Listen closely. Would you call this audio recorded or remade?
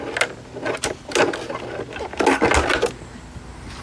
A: recorded